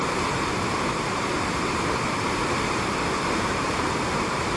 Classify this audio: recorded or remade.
remade